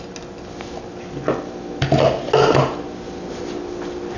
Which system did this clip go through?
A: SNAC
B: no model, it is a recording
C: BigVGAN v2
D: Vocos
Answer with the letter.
B